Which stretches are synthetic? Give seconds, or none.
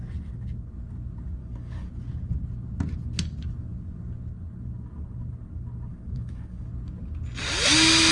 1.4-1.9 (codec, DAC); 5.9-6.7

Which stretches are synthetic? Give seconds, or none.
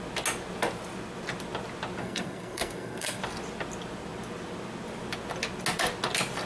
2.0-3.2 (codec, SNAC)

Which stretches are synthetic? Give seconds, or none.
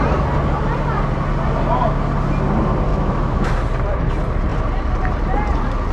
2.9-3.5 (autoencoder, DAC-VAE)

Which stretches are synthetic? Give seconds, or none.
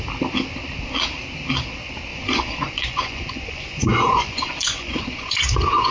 2.1-5.9 (vocoder, Vocos)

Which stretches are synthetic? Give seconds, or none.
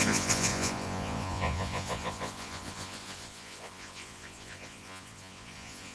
0.0-5.9 (vocoder, Vocos)